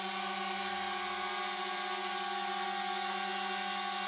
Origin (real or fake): real